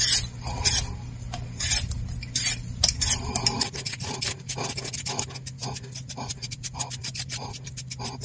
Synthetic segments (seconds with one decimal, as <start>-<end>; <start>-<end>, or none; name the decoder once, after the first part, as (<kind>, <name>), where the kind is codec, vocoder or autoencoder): 5.6-7.3 (vocoder, BigVGAN v2)